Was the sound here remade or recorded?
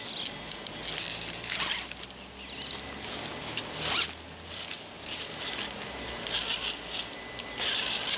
recorded